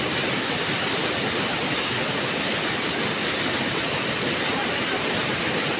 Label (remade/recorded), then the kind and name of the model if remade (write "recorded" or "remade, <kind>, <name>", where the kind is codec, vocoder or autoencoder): recorded